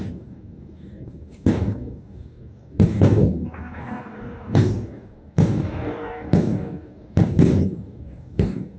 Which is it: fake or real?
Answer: fake